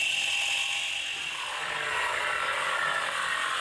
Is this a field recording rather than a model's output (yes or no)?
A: yes